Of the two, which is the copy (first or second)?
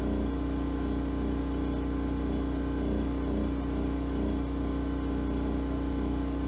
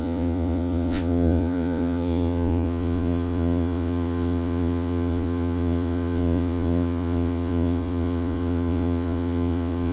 second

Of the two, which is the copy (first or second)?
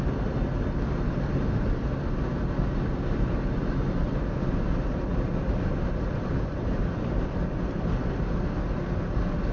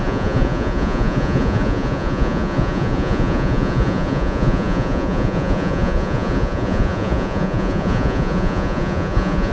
second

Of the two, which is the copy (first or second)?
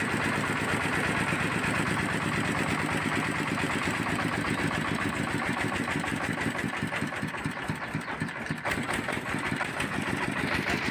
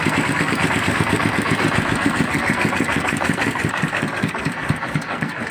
second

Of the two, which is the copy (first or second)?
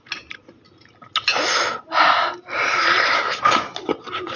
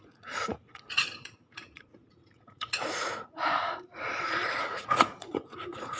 second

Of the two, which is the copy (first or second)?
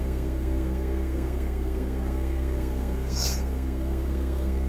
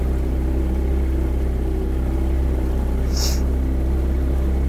first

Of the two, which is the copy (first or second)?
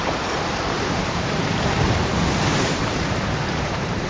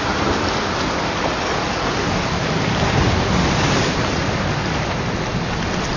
first